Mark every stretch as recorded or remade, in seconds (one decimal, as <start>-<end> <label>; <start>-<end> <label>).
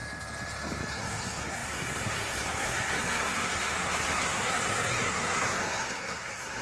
0.0-0.9 recorded; 0.9-6.6 remade